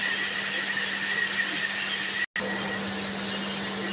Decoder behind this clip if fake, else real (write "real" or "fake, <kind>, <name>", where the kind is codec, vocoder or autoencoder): real